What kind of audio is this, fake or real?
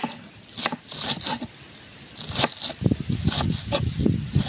real